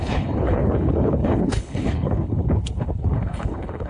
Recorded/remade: remade